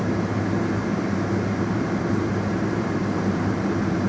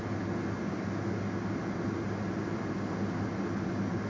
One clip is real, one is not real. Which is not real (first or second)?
first